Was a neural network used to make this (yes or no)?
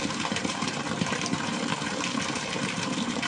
yes